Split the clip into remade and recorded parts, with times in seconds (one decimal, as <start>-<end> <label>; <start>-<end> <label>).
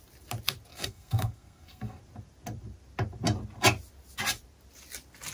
0.0-0.7 recorded; 0.7-2.0 remade; 2.0-5.3 recorded